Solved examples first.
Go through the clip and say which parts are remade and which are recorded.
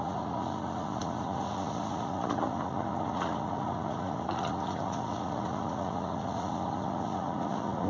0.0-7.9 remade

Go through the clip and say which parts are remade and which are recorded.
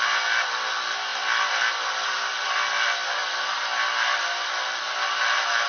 0.0-1.1 recorded; 1.1-1.7 remade; 1.7-3.2 recorded; 3.2-3.9 remade; 3.9-5.7 recorded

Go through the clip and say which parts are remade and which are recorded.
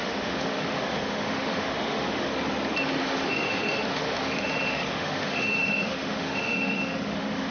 0.0-2.3 remade; 2.3-3.0 recorded; 3.0-7.5 remade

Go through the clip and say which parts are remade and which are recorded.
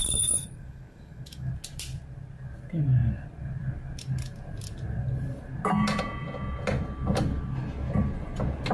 0.0-1.5 remade; 1.5-8.7 recorded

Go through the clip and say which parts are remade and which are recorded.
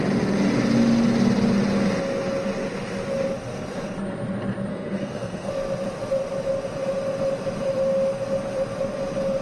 0.0-4.7 recorded; 4.7-5.5 remade; 5.5-9.4 recorded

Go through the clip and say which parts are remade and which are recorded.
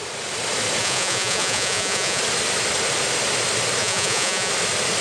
0.0-0.8 recorded; 0.8-2.2 remade; 2.2-3.8 recorded; 3.8-4.5 remade; 4.5-5.0 recorded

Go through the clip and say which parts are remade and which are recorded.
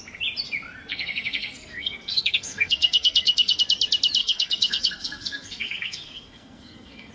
0.0-0.9 recorded; 0.9-3.6 remade; 3.6-4.2 recorded; 4.2-7.1 remade